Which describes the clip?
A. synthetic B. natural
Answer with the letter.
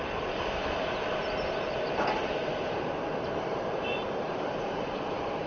A